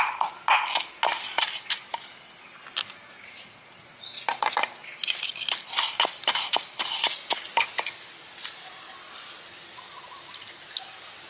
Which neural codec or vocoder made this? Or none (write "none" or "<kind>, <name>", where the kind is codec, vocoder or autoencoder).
none